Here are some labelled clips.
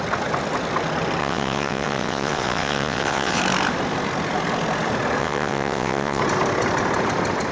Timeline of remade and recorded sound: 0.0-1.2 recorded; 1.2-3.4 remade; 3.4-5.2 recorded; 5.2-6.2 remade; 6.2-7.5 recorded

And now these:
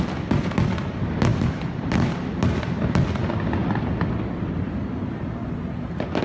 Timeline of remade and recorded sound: 0.0-1.3 recorded; 1.3-2.2 remade; 2.2-6.2 recorded

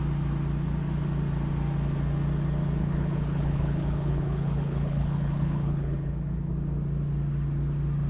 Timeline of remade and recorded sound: 0.0-2.8 recorded; 2.8-6.5 remade; 6.5-8.1 recorded

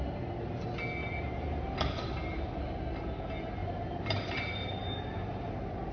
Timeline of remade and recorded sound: 0.0-1.0 recorded; 1.0-2.6 remade; 2.6-3.6 recorded; 3.6-5.5 remade; 5.5-5.9 recorded

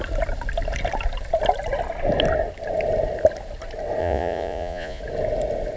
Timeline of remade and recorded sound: 0.0-4.0 recorded; 4.0-5.0 remade; 5.0-5.8 recorded

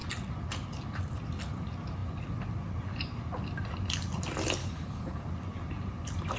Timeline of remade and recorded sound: 0.0-4.6 recorded; 4.6-5.2 remade; 5.2-6.4 recorded